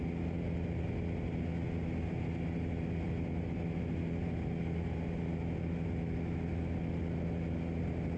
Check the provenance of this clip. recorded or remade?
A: recorded